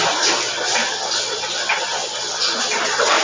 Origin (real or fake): real